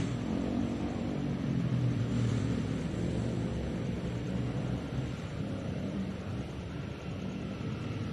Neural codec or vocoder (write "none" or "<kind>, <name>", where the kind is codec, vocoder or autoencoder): vocoder, BigVGAN v2